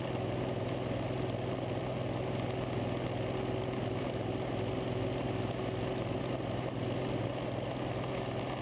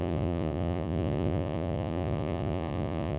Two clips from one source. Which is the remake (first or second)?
second